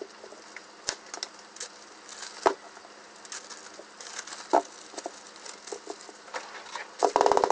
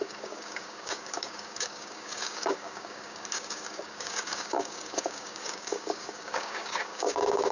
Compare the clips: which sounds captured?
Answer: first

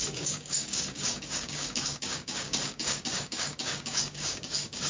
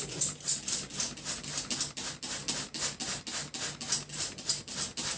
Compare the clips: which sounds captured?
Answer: second